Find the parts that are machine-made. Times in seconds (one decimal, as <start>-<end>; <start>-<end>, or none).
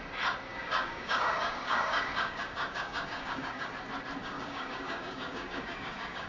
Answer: 0.5-3.7; 4.2-6.3